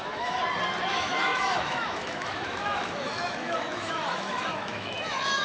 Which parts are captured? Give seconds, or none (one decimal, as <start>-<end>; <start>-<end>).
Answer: 0.4-0.9